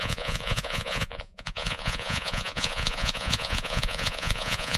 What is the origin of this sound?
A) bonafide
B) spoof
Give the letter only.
B